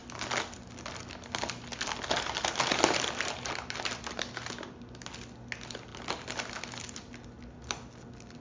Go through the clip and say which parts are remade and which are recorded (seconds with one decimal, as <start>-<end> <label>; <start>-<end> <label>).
0.0-1.7 recorded; 1.7-4.2 remade; 4.2-8.4 recorded